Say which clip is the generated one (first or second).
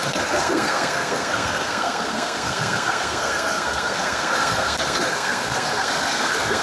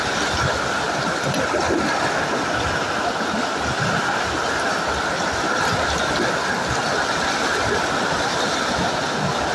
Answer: first